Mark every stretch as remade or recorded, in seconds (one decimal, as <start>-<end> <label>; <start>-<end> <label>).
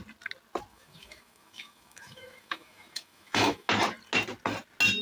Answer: 0.0-0.7 recorded; 0.7-3.7 remade; 3.7-5.0 recorded